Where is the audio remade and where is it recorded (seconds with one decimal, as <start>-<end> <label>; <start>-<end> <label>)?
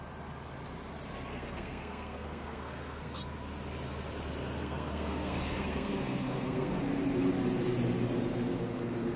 0.0-1.3 recorded; 1.3-3.2 remade; 3.2-4.6 recorded; 4.6-6.8 remade; 6.8-9.2 recorded